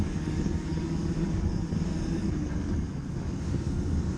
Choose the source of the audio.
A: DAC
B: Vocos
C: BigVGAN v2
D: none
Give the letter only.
A